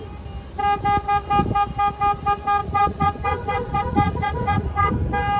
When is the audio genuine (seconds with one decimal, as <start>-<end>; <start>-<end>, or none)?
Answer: 0.0-2.6; 4.9-5.4